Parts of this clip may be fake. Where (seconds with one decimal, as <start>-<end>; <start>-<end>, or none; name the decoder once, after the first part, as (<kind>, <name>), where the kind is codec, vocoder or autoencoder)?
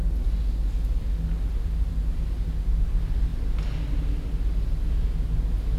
none